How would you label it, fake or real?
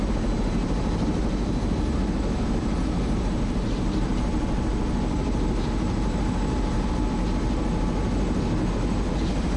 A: real